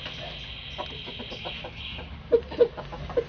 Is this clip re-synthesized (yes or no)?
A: no